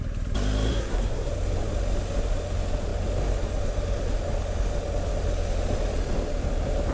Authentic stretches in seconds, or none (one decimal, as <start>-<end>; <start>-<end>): 0.0-0.7; 1.3-6.9